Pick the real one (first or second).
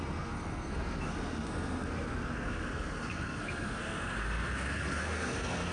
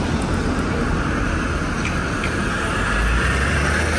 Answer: second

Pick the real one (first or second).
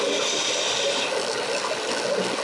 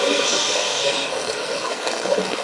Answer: first